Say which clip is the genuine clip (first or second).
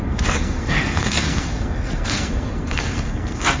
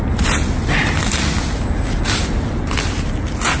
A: second